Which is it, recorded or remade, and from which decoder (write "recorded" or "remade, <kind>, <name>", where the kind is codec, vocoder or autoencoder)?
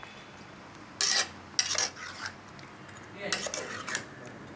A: recorded